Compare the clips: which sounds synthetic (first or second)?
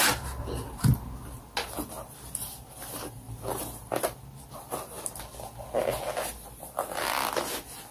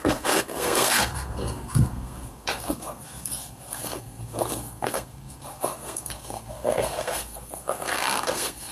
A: second